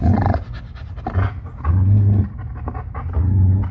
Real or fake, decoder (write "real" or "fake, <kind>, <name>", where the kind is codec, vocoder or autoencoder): real